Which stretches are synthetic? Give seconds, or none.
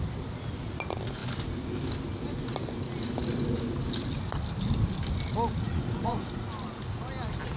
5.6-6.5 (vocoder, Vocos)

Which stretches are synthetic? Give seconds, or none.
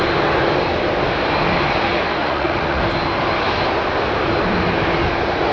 2.2-2.8 (vocoder, Vocos)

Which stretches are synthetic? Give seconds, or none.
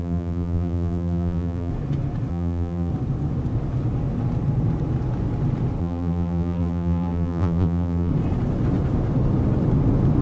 0.0-1.7 (vocoder, BigVGAN v2); 2.3-2.9; 5.8-8.1